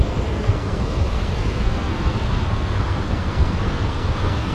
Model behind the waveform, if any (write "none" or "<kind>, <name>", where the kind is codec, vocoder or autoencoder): codec, SNAC